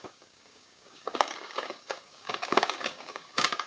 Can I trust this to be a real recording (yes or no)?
no